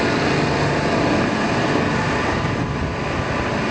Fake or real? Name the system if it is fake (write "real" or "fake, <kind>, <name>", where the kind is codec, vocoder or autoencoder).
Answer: real